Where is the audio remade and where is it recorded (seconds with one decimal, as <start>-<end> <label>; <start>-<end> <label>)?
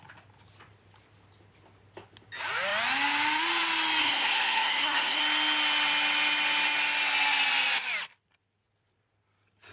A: 0.0-4.0 recorded; 4.0-5.2 remade; 5.2-9.7 recorded